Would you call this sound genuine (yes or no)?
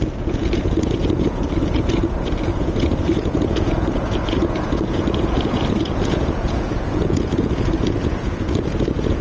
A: no